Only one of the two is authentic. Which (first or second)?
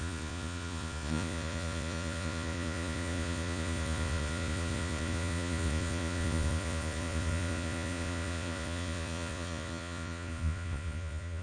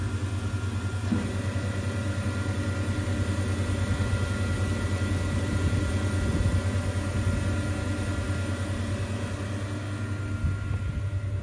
second